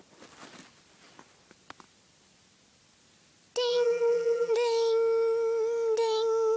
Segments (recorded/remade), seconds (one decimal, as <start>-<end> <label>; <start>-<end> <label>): 0.0-3.7 recorded; 3.7-4.5 remade; 4.5-6.6 recorded